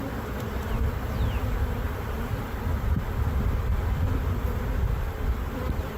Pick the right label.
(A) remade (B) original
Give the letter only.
B